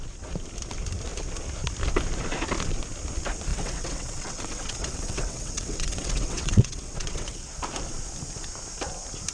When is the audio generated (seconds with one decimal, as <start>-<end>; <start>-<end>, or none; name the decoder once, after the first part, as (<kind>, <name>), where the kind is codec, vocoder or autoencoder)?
3.5-7.6 (vocoder, WaveNeXt)